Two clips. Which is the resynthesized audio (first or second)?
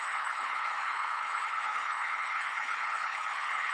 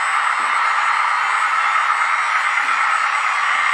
first